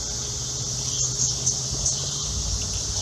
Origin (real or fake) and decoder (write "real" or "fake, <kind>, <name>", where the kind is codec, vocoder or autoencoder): real